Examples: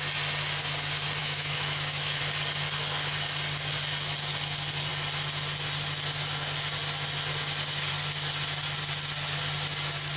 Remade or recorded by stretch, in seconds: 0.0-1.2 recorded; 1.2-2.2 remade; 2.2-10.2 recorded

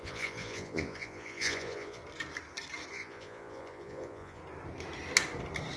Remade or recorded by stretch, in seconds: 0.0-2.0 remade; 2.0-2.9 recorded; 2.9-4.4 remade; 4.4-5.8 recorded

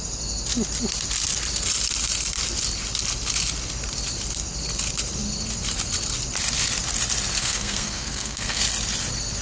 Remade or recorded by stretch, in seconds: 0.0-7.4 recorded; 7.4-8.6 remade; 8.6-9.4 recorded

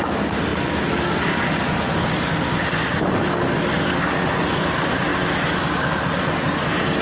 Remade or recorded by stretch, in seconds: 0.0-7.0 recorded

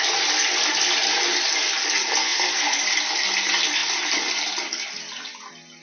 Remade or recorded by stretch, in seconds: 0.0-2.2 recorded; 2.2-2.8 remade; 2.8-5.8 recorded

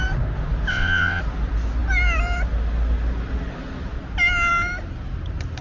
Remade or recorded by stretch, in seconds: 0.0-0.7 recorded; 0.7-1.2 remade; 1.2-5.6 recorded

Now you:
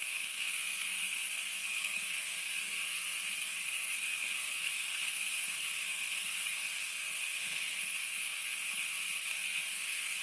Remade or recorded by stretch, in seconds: 0.0-10.2 remade